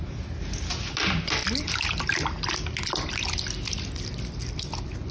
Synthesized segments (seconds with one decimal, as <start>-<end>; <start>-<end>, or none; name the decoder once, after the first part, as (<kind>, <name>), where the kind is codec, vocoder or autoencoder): none